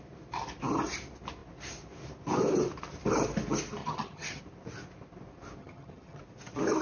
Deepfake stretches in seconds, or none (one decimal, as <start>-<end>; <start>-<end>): 3.8-4.4; 5.6-6.2